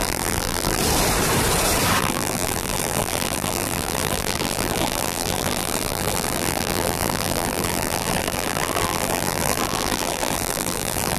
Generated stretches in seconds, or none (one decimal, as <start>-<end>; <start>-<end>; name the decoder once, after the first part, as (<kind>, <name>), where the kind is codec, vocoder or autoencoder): 0.0-0.8 (vocoder, BigVGAN v2); 2.0-11.2